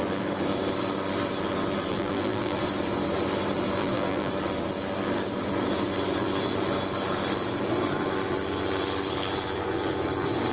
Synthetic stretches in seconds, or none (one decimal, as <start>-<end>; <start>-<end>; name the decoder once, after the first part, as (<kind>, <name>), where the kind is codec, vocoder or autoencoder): 1.9-2.6 (vocoder, BigVGAN v2); 3.8-4.3